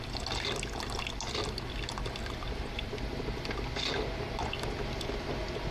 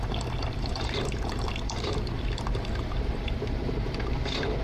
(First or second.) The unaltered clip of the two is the first